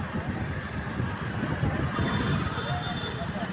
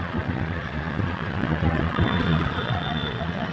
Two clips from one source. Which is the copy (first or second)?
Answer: second